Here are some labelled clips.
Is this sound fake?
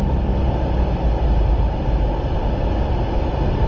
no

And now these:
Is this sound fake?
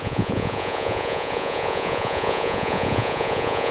yes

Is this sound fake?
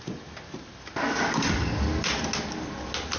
no